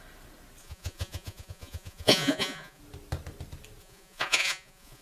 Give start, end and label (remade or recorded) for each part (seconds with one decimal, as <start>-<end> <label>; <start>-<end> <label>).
0.0-0.6 recorded; 0.6-2.8 remade; 2.8-3.8 recorded; 3.8-5.0 remade